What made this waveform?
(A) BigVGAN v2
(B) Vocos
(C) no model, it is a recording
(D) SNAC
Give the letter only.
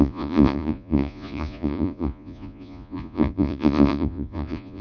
B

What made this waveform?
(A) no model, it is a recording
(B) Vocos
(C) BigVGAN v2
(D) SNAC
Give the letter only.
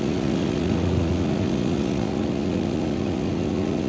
B